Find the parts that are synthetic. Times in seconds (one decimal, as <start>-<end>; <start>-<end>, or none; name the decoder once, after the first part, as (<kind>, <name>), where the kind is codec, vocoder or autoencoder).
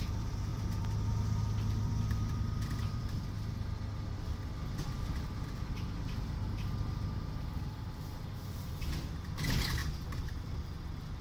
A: 0.5-3.3 (vocoder, BigVGAN v2); 7.5-8.2; 9.8-10.7